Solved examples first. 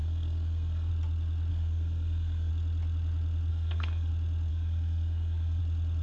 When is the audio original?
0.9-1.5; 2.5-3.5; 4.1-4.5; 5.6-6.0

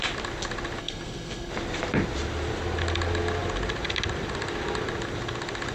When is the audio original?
0.0-0.8; 1.5-5.7

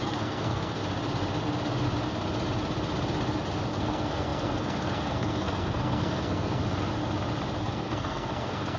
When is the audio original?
0.8-3.7; 6.6-7.6

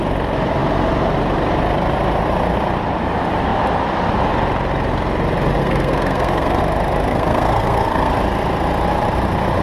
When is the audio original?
0.0-5.6; 6.6-7.1; 8.1-9.6

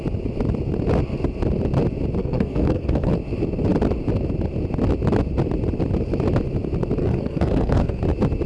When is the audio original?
0.0-2.2; 3.1-7.0; 8.0-8.5

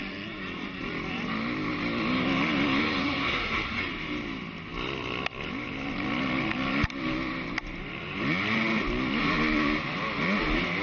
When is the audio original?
0.0-3.0; 3.8-10.8

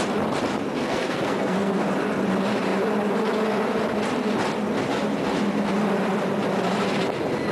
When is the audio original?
0.0-0.8; 1.9-7.5